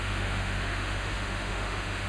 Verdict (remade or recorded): remade